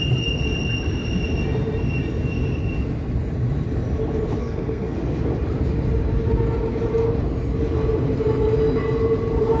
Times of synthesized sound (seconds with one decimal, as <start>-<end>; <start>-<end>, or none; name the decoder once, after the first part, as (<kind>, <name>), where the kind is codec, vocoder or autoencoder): 4.4-5.0 (codec, SNAC)